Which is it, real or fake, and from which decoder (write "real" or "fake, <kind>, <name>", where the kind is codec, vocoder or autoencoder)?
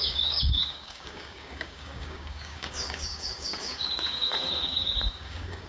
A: fake, codec, DAC